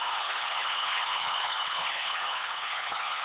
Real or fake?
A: fake